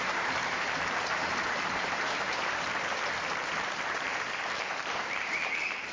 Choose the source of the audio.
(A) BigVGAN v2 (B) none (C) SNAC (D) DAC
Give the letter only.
A